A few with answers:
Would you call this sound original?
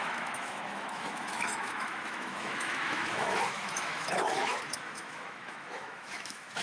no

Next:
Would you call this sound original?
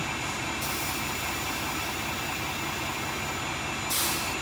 yes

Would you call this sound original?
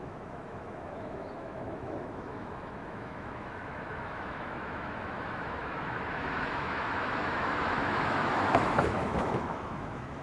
no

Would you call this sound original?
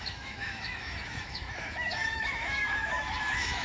no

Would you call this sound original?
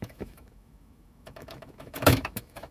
no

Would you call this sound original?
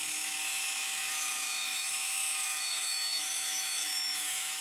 no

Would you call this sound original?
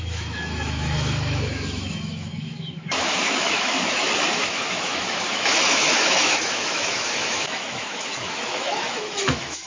no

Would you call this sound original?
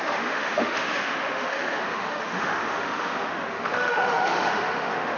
no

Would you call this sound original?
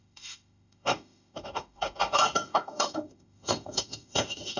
no